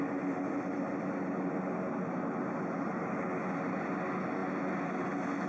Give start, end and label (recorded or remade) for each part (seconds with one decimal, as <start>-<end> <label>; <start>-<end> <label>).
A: 0.0-5.5 recorded